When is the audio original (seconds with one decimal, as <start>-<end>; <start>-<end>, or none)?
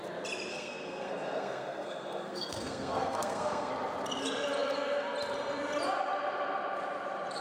0.0-0.5; 3.7-7.4